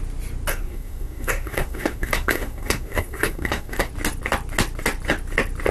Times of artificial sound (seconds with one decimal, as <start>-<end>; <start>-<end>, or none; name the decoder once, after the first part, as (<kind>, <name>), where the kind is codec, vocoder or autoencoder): 0.5-3.9 (codec, SNAC)